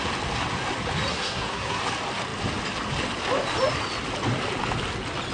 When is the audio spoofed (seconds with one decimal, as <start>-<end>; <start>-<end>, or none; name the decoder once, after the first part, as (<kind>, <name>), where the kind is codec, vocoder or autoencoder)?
1.1-1.8 (codec, SNAC)